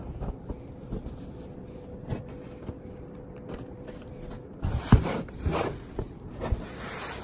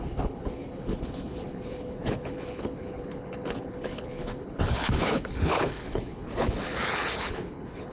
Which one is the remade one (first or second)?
second